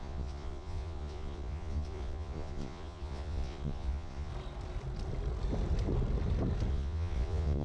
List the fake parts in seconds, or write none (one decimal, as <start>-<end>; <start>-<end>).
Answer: 0.0-4.3; 6.7-7.6